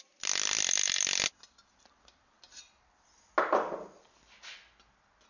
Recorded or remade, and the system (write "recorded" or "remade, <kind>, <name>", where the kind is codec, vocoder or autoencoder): recorded